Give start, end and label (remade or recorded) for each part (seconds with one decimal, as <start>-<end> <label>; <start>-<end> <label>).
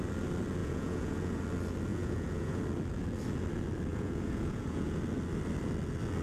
0.0-0.6 recorded; 0.6-1.4 remade; 1.4-1.9 recorded; 1.9-2.6 remade; 2.6-3.9 recorded; 3.9-5.0 remade; 5.0-6.2 recorded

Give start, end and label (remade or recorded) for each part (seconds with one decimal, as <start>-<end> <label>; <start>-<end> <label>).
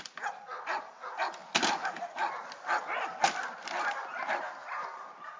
0.0-5.4 recorded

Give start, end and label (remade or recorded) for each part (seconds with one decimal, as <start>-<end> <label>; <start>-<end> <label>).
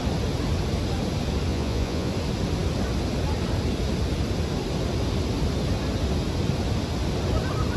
0.0-1.5 recorded; 1.5-2.1 remade; 2.1-7.8 recorded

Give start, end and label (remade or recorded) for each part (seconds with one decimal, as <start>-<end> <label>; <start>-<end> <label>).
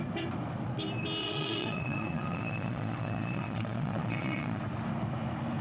0.0-1.2 recorded; 1.2-4.6 remade; 4.6-5.6 recorded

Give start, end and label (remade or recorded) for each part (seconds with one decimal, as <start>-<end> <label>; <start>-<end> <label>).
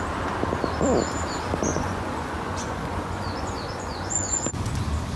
0.0-1.7 recorded; 1.7-4.8 remade; 4.8-5.2 recorded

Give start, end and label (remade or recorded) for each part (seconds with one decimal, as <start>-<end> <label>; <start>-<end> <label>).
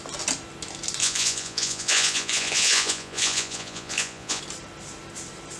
0.0-1.0 recorded; 1.0-4.4 remade; 4.4-5.6 recorded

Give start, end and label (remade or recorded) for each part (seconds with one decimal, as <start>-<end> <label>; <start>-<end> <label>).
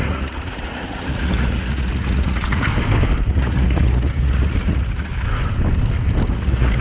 0.0-2.7 remade; 2.7-3.3 recorded; 3.3-5.1 remade; 5.1-6.3 recorded; 6.3-6.8 remade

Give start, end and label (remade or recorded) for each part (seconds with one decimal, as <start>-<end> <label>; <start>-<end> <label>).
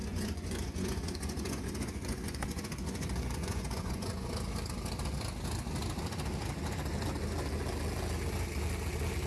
0.0-4.3 remade; 4.3-9.3 recorded